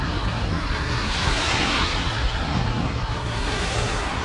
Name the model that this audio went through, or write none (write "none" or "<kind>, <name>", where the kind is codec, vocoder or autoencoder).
codec, SNAC